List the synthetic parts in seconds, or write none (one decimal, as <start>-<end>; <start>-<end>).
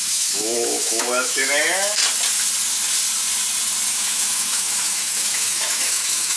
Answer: 0.0-2.0; 3.9-6.4